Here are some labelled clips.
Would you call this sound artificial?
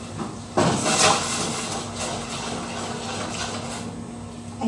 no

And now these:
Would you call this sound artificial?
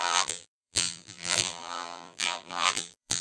yes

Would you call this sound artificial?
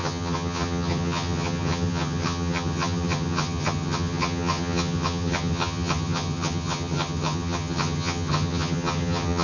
yes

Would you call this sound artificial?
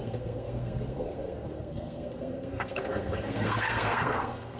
yes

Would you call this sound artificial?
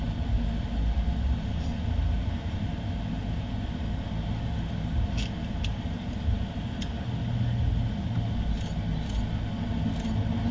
no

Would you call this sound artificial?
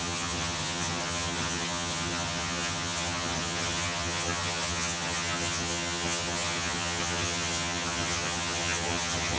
yes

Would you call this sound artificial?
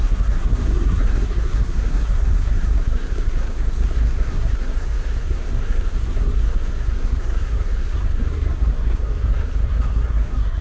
yes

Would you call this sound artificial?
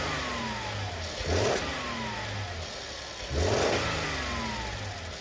no